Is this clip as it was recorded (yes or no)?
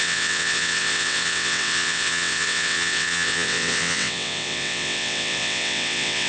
no